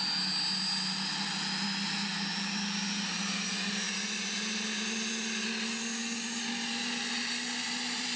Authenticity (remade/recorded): recorded